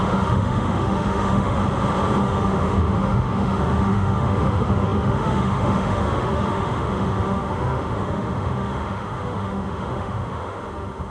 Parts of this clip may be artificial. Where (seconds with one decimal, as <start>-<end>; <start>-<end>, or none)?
0.0-1.6; 2.2-11.1

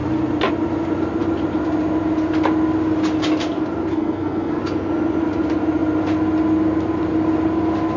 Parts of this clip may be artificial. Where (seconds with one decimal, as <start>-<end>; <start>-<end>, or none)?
3.9-4.6

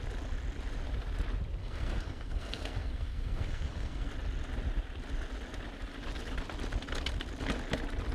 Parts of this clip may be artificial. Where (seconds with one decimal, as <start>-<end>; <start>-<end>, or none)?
1.6-4.1

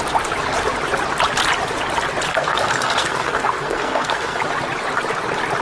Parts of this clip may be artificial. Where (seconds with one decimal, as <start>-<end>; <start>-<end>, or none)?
2.3-4.4

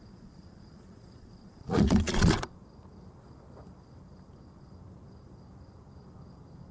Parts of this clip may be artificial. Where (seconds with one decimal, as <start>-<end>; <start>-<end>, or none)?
0.0-2.5